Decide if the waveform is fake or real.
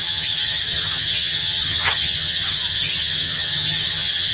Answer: fake